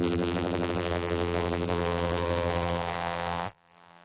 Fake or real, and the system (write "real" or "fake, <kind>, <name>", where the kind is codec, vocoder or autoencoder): fake, vocoder, BigVGAN v2